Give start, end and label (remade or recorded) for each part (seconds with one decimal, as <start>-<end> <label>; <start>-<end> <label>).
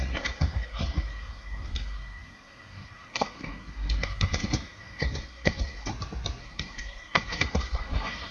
0.0-5.9 remade; 5.9-6.4 recorded; 6.4-8.3 remade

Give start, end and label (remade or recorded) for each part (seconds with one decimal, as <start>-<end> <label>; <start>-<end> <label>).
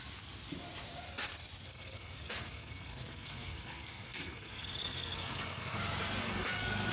0.0-1.7 recorded; 1.7-5.8 remade; 5.8-6.2 recorded; 6.2-6.9 remade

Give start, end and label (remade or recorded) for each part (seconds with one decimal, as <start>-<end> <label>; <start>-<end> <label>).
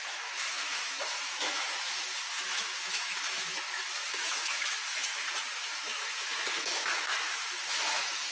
0.0-5.1 remade; 5.1-5.6 recorded; 5.6-8.3 remade